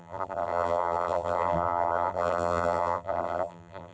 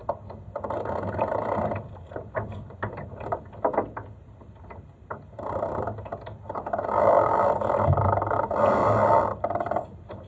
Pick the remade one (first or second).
first